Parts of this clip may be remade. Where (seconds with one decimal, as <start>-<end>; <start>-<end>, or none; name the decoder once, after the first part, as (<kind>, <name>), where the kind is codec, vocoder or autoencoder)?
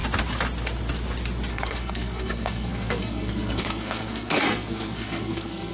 1.5-5.7 (codec, SNAC)